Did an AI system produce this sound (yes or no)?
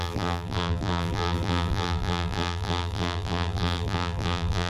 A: yes